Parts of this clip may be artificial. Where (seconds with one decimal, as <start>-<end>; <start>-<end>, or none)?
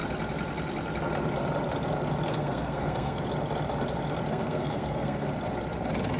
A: 2.3-3.2; 4.3-5.3